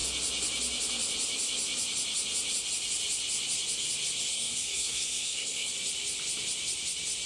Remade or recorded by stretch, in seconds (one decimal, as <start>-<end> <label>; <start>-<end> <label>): 0.0-4.3 recorded; 4.3-5.7 remade; 5.7-7.3 recorded